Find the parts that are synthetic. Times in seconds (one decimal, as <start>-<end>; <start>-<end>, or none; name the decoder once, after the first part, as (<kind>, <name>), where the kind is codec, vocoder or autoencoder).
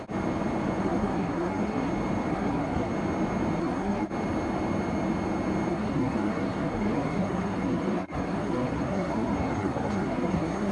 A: 0.8-1.9 (codec, SNAC); 2.3-2.9; 3.6-4.1; 5.7-10.7